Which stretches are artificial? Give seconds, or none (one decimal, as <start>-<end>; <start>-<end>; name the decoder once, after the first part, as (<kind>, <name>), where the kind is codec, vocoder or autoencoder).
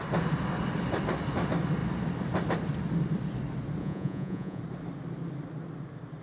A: 3.8-4.6 (vocoder, Vocos)